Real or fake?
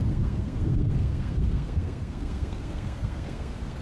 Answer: fake